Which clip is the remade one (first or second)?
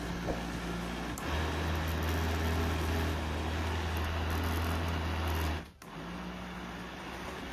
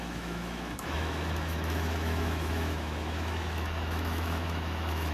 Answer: second